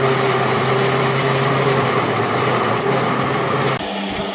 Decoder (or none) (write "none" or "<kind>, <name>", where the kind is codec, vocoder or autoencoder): none